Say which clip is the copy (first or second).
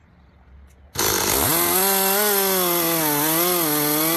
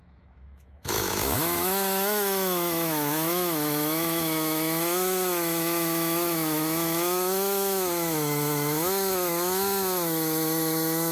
second